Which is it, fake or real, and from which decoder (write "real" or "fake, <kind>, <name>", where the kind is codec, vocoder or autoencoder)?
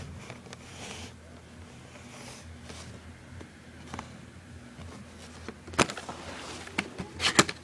real